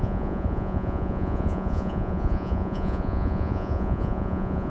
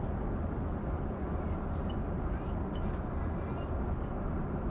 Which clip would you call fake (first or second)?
first